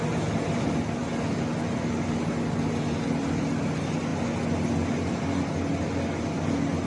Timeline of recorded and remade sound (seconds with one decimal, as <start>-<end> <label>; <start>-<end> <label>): 0.0-6.9 recorded